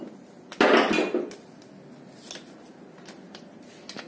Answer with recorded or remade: recorded